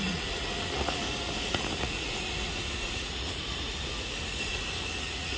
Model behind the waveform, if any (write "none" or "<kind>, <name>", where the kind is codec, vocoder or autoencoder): vocoder, Vocos